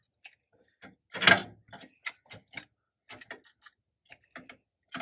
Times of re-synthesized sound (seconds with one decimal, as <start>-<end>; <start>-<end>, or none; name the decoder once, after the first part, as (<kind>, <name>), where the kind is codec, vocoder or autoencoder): none